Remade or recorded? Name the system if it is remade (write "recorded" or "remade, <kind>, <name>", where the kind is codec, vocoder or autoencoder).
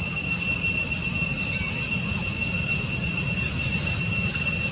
recorded